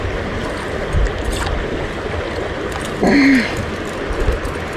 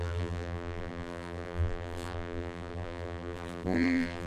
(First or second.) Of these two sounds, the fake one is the second